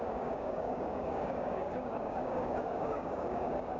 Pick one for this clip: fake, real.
fake